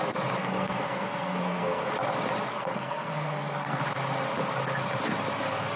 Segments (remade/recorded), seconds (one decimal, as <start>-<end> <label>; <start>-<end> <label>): 0.0-0.4 recorded; 0.4-1.9 remade; 1.9-2.5 recorded; 2.5-3.8 remade; 3.8-5.8 recorded